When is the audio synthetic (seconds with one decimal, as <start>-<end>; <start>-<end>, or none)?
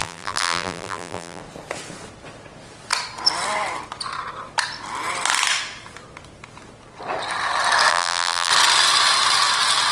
0.0-1.4; 7.9-8.5